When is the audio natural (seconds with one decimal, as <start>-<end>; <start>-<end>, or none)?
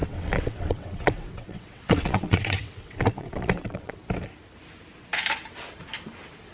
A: 3.9-6.5